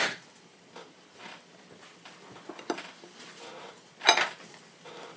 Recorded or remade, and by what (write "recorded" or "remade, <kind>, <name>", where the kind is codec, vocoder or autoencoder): recorded